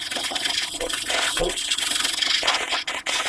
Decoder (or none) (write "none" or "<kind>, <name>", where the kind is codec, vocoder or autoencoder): vocoder, Vocos